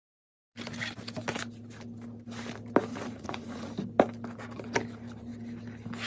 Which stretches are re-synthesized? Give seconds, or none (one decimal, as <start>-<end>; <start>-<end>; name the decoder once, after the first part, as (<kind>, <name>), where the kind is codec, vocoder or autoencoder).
2.9-3.7 (vocoder, Vocos)